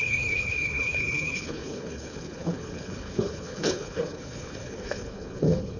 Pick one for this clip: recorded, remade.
remade